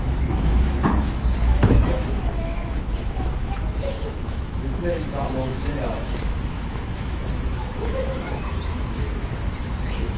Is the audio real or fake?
fake